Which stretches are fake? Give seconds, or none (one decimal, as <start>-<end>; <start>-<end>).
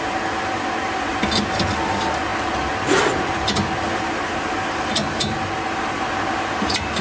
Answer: none